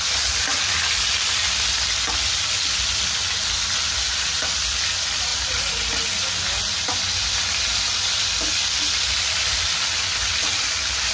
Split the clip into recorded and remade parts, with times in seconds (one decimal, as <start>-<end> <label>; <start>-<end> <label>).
0.0-11.1 recorded